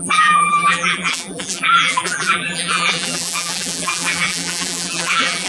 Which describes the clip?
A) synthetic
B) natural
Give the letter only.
A